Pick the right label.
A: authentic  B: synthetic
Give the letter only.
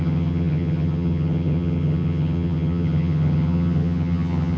B